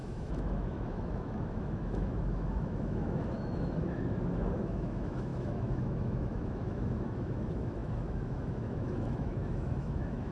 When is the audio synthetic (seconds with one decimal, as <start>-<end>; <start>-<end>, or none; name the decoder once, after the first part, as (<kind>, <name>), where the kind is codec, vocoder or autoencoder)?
0.0-10.3 (autoencoder, DAC-VAE)